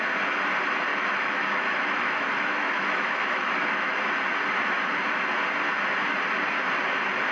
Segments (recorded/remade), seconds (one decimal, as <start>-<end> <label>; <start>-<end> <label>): 0.0-0.9 recorded; 0.9-4.0 remade; 4.0-7.3 recorded